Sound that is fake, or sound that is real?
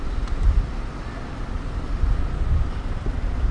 real